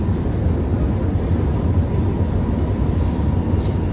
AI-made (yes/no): no